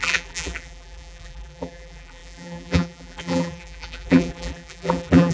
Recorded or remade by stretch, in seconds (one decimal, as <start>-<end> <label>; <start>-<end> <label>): 0.0-5.3 remade